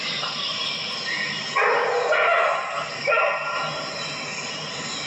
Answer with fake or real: real